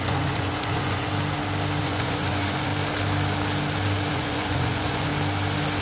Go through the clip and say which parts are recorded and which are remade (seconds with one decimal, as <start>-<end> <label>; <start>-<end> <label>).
0.0-1.1 remade; 1.1-1.8 recorded; 1.8-2.7 remade; 2.7-4.1 recorded; 4.1-5.1 remade; 5.1-5.8 recorded